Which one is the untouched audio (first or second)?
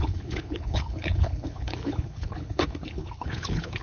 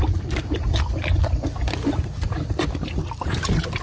second